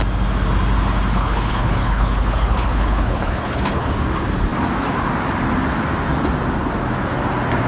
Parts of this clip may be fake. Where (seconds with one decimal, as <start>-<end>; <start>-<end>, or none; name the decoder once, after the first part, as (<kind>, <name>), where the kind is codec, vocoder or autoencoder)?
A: 1.1-3.9 (codec, HILCodec)